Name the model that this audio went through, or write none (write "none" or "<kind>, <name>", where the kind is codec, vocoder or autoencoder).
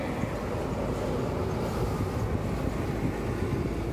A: none